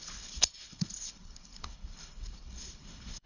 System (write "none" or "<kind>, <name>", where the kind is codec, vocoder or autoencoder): codec, HILCodec